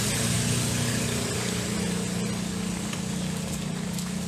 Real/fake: real